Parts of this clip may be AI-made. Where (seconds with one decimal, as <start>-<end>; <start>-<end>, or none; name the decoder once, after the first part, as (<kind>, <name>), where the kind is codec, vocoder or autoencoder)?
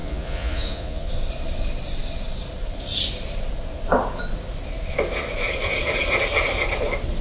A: 0.0-1.1 (vocoder, Vocos)